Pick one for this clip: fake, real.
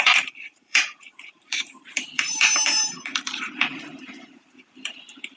fake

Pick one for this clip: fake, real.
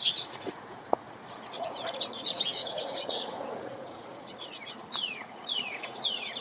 fake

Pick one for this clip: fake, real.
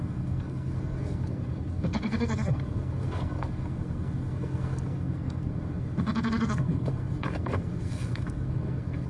fake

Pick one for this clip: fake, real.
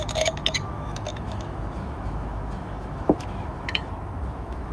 fake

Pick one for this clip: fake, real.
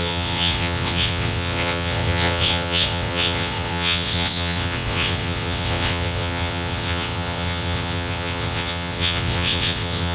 fake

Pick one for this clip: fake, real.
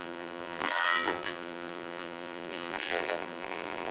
fake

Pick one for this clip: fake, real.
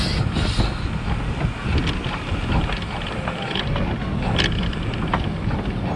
real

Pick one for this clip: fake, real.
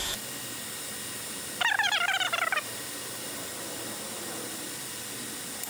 real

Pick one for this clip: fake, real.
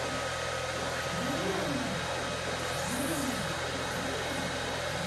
real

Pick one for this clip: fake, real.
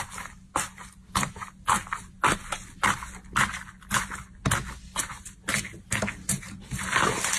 real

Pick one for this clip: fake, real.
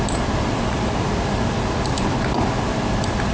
real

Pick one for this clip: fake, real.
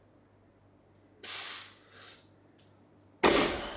real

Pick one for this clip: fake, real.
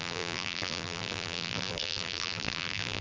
fake